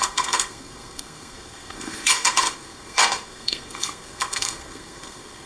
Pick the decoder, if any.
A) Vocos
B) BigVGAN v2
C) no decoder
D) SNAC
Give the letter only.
D